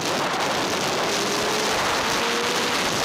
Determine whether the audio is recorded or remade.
recorded